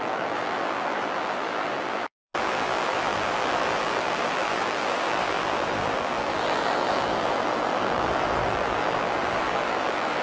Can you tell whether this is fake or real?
fake